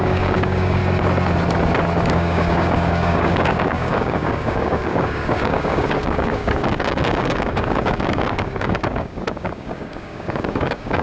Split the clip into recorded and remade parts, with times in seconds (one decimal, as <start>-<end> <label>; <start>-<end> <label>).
0.0-0.8 remade; 0.8-2.1 recorded; 2.1-11.0 remade